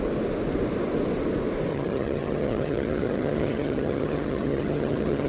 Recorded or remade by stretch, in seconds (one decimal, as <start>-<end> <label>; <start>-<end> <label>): 0.0-1.7 recorded; 1.7-5.3 remade